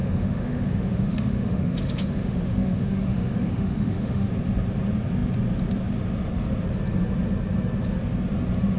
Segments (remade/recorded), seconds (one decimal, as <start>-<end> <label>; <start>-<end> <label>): 0.0-4.3 remade; 4.3-8.8 recorded